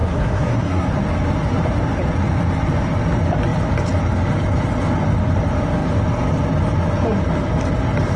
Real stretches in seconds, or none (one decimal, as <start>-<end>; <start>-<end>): 0.9-8.2